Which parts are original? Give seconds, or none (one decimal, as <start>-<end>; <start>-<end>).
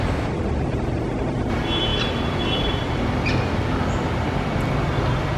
0.0-5.4